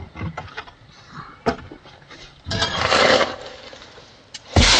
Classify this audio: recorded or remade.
recorded